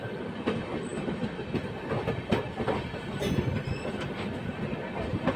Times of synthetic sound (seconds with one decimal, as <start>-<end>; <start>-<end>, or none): none